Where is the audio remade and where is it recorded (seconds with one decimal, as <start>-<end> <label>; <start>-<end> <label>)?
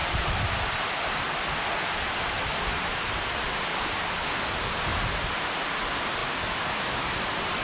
0.0-3.8 remade; 3.8-4.9 recorded; 4.9-5.6 remade; 5.6-7.6 recorded